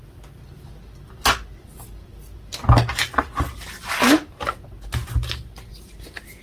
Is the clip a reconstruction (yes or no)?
no